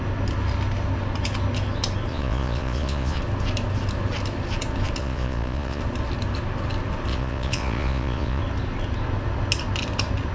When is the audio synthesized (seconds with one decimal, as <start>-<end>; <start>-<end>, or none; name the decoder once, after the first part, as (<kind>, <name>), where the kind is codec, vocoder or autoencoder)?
2.1-3.2 (vocoder, Vocos); 5.0-5.8; 7.1-8.4

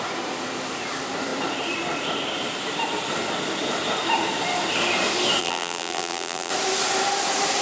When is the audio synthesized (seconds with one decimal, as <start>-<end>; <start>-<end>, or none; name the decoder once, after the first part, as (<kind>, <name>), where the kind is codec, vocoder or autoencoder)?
5.4-6.5 (vocoder, BigVGAN v2)

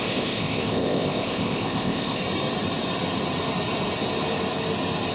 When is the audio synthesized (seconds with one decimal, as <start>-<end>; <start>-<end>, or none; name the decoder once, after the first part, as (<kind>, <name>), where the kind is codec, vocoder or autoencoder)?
0.0-2.2 (codec, ZipCodec)

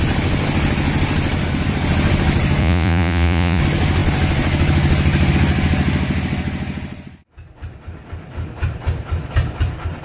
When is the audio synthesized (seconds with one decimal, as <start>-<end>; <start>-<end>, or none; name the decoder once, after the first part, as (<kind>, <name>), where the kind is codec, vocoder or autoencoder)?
2.6-3.6 (vocoder, Vocos)